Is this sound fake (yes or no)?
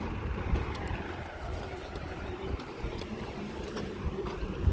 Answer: yes